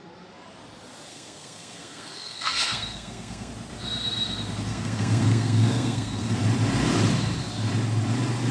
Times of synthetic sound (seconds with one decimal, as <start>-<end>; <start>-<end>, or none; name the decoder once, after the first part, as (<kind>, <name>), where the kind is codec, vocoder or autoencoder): 1.1-3.5 (codec, SNAC); 4.7-6.4